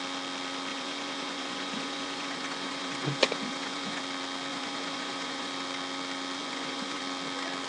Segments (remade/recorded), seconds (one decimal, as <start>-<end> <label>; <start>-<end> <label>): 0.0-0.7 recorded; 0.7-4.0 remade; 4.0-4.5 recorded; 4.5-5.5 remade; 5.5-6.4 recorded; 6.4-7.0 remade; 7.0-7.7 recorded